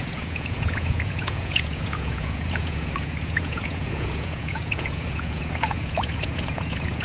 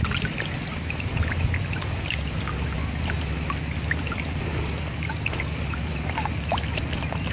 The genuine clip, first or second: second